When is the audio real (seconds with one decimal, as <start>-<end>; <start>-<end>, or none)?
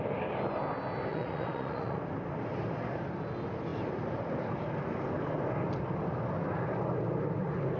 0.0-1.1; 2.0-7.8